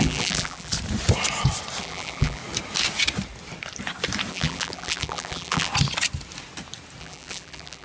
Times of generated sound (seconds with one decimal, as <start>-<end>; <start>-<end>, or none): 0.0-0.7; 1.8-2.4; 4.3-5.7; 7.0-7.8